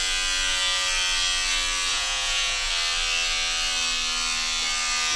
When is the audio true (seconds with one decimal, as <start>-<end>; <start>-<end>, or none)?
0.0-1.9; 2.7-5.2